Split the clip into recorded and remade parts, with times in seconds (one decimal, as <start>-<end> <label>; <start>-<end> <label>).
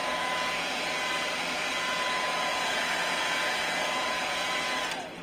0.0-1.1 remade; 1.1-1.7 recorded; 1.7-4.8 remade; 4.8-5.2 recorded